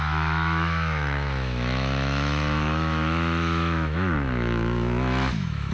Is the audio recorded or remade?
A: remade